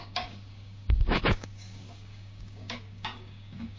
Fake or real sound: fake